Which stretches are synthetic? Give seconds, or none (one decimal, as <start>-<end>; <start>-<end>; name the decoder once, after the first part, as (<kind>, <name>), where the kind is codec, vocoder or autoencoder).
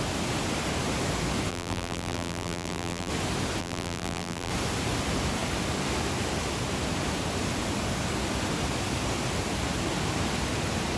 1.5-3.1 (vocoder, BigVGAN v2); 3.6-4.5